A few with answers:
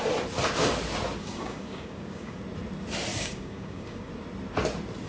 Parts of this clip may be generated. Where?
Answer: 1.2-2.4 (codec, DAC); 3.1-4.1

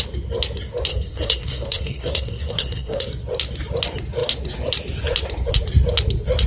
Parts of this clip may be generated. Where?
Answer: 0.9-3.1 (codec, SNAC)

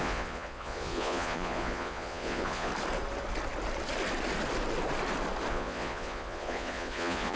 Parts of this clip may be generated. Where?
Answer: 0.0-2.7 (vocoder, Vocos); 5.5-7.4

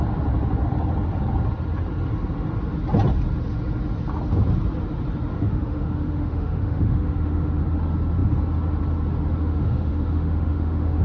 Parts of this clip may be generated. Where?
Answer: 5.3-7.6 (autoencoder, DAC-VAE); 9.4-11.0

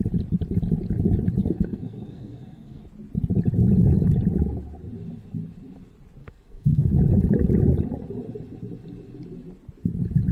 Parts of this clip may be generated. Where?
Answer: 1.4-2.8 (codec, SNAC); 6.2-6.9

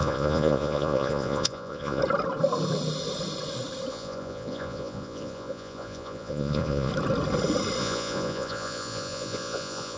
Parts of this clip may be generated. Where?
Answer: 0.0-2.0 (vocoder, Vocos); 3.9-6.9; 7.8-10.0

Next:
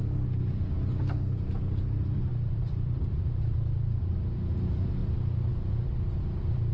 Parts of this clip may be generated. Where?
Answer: 0.0-6.7 (vocoder, BigVGAN v2)

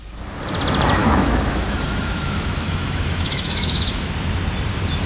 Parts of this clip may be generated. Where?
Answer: 1.0-4.1 (autoencoder, DAC-VAE)